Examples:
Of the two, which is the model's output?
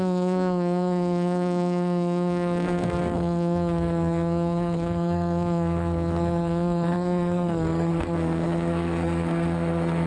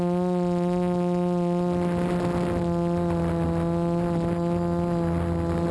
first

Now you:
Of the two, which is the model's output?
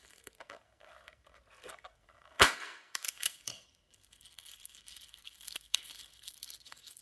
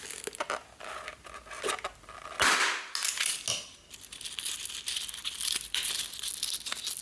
first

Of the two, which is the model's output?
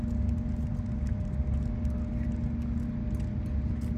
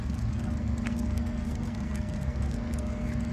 second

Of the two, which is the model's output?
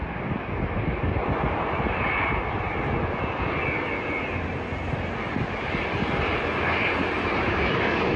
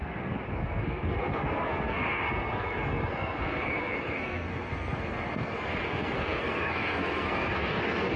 second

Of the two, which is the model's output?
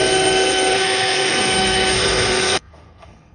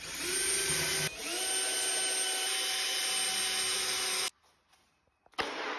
first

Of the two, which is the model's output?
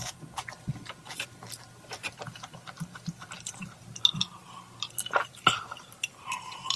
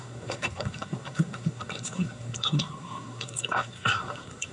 second